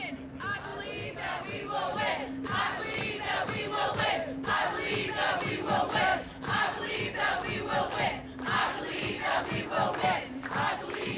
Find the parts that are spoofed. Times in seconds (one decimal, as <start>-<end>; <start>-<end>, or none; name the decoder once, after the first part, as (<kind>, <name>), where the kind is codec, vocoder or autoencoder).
6.1-7.0 (autoencoder, DAC-VAE); 8.6-9.4